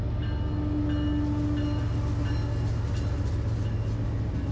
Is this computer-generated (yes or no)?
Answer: no